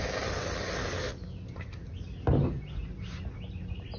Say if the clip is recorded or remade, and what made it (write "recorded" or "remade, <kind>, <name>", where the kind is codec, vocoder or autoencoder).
recorded